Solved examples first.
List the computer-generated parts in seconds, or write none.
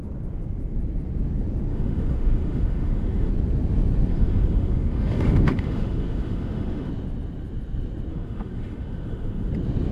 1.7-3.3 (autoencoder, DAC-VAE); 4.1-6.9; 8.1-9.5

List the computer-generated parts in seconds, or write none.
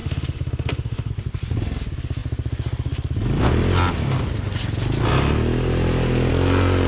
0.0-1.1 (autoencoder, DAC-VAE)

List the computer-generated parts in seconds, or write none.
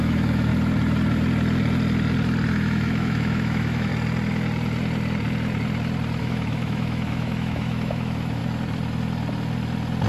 0.0-0.5 (autoencoder, DAC-VAE); 2.5-3.9; 6.2-8.4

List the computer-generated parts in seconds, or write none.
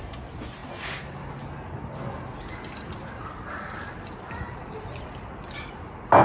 none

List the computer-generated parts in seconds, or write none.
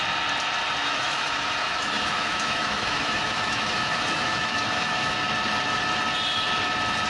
0.8-5.1 (autoencoder, DAC-VAE)